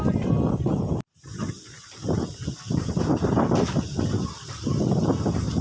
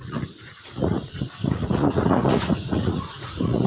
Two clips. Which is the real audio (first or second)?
first